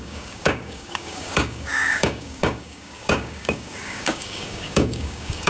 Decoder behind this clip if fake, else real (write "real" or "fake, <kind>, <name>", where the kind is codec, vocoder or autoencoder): fake, codec, DAC